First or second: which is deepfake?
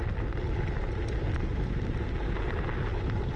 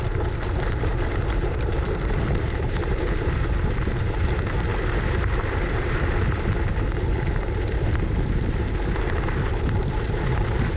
second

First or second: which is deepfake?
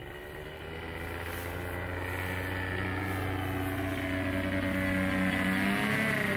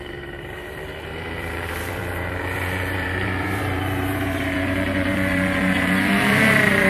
second